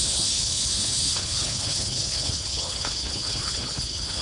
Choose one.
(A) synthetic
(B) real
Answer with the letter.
A